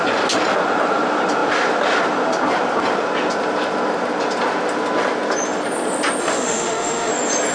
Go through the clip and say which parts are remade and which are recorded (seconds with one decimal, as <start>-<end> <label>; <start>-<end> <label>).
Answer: 0.0-6.2 recorded; 6.2-7.1 remade; 7.1-7.5 recorded